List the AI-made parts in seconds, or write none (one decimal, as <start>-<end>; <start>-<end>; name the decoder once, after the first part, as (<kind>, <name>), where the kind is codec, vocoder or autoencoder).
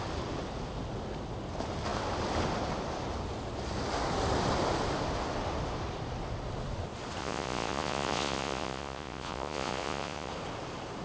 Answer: 7.2-10.3 (vocoder, Vocos)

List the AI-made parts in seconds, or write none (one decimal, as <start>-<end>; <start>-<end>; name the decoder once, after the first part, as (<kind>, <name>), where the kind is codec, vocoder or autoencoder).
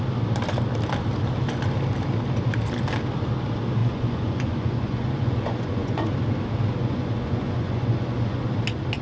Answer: 3.8-6.1 (vocoder, Vocos); 6.8-8.5